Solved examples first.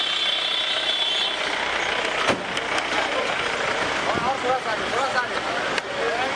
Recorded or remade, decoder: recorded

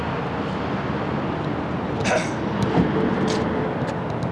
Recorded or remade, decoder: recorded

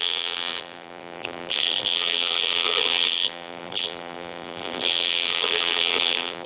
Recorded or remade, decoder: remade, vocoder, BigVGAN v2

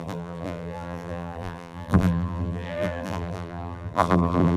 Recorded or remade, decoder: remade, vocoder, BigVGAN v2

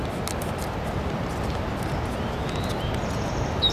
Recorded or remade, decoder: recorded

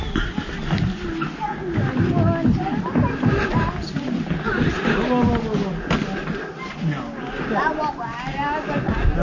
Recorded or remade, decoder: recorded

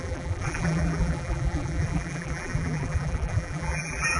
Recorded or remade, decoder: remade, vocoder, BigVGAN v2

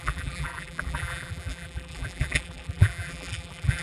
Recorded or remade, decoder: remade, vocoder, BigVGAN v2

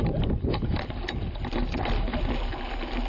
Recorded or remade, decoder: recorded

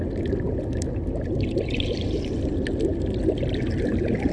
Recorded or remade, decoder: recorded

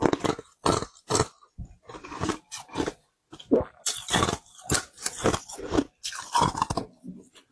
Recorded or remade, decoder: recorded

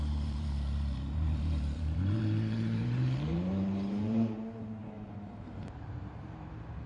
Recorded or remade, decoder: remade, vocoder, BigVGAN v2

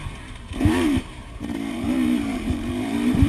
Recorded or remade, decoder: remade, vocoder, BigVGAN v2